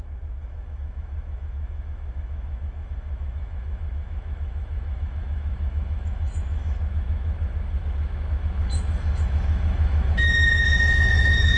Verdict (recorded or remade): remade